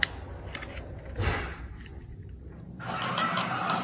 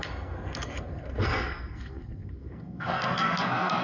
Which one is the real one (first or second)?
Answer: first